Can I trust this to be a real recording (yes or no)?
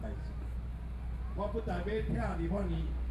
yes